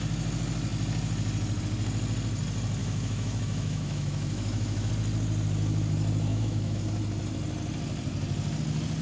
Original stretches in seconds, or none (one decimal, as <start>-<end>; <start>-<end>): 0.0-2.8; 4.9-6.3; 6.8-9.0